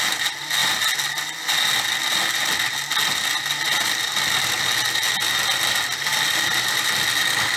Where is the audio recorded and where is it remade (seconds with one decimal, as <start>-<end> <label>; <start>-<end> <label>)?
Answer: 0.0-7.6 recorded